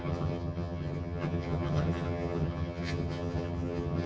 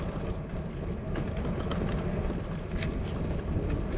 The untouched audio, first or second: second